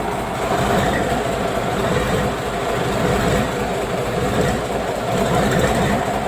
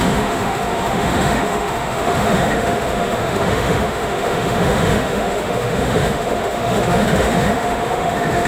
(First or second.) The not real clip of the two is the second